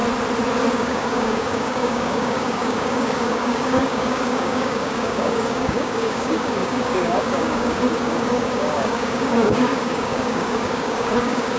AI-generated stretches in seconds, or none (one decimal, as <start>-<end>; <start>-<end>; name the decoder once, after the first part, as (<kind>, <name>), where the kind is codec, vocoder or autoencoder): 0.7-11.6 (codec, DAC)